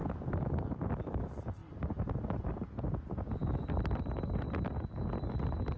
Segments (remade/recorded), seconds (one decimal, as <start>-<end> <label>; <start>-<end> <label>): 0.0-1.6 recorded; 1.6-4.8 remade; 4.8-5.8 recorded